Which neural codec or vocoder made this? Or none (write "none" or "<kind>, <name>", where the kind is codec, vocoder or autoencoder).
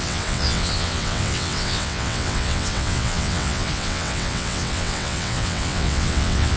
vocoder, WaveNeXt